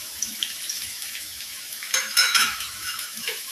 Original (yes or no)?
no